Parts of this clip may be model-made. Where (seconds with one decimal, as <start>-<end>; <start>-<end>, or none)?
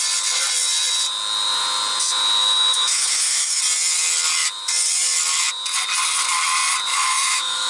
2.4-3.6; 6.9-7.7